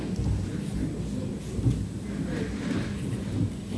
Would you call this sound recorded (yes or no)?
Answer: yes